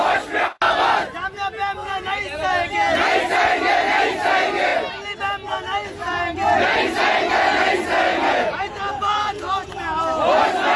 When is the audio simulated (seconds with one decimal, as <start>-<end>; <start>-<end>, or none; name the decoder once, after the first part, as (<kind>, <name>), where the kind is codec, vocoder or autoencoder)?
1.8-2.7 (vocoder, Vocos); 8.1-10.0